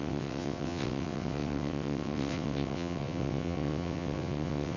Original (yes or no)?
no